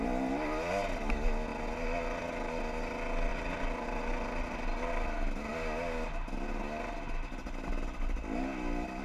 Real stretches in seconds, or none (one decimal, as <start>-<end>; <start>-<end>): 0.0-9.0